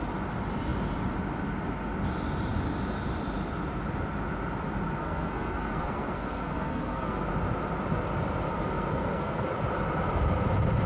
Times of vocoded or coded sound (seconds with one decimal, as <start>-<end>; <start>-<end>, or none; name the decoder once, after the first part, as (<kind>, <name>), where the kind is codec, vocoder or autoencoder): 5.0-7.3 (codec, SNAC); 8.5-9.5